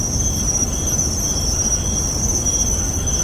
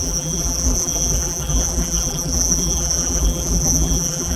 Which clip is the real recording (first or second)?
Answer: first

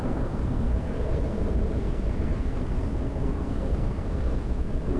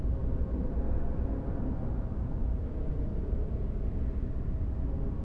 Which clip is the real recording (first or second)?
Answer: second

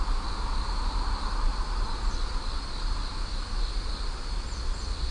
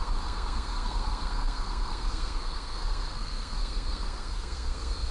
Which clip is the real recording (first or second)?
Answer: first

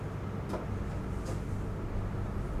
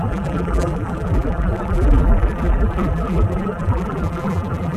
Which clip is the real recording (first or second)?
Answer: first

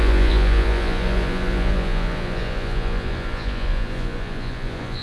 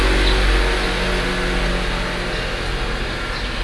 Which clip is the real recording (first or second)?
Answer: second